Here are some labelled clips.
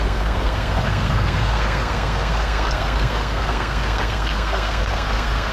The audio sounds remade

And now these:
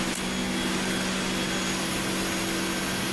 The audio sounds recorded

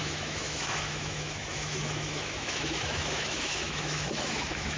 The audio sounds remade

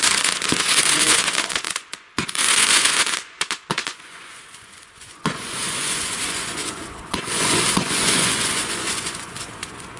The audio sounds remade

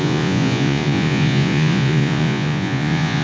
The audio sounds remade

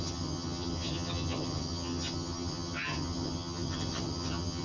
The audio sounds remade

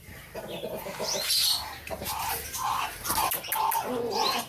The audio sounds recorded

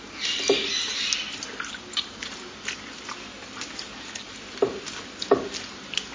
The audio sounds recorded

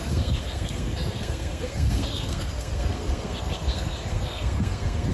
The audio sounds remade